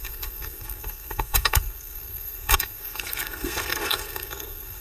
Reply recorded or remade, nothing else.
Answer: remade